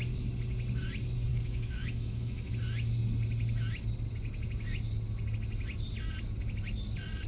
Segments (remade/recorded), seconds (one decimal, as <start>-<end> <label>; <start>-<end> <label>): 0.0-1.3 recorded; 1.3-2.5 remade; 2.5-7.3 recorded

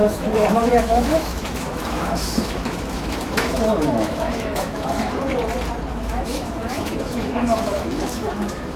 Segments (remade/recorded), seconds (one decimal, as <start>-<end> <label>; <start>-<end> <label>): 0.0-5.1 remade; 5.1-5.9 recorded; 5.9-8.8 remade

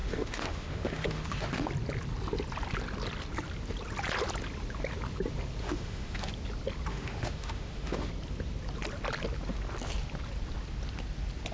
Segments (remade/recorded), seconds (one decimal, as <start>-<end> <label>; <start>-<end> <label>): 0.0-1.7 remade; 1.7-5.6 recorded; 5.6-6.3 remade; 6.3-6.9 recorded; 6.9-8.1 remade; 8.1-11.5 recorded

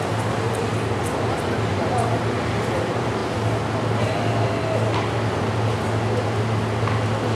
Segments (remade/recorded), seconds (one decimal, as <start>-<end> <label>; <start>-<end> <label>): 0.0-7.3 recorded

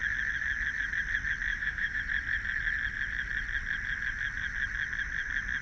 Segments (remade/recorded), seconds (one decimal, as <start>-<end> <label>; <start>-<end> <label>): 0.0-1.5 recorded; 1.5-2.0 remade; 2.0-5.6 recorded

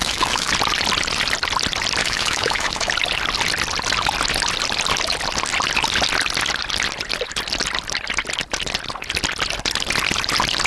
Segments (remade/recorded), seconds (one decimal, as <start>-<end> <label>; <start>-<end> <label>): 0.0-0.5 remade; 0.5-2.0 recorded; 2.0-2.9 remade; 2.9-10.7 recorded